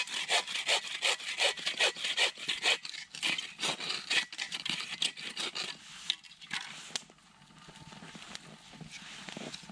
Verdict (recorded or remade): recorded